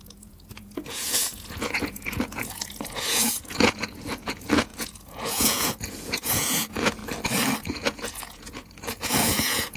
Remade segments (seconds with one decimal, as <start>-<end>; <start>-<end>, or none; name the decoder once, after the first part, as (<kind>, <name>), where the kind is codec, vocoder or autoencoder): 0.0-7.0 (vocoder, Vocos); 7.6-9.8